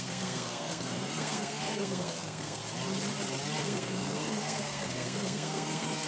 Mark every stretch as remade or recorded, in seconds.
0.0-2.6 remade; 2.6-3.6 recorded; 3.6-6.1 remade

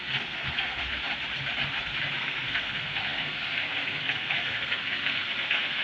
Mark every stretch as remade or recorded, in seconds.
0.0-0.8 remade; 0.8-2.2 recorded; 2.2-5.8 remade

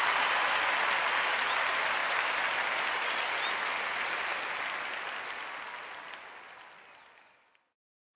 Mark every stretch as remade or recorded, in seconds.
0.0-8.2 recorded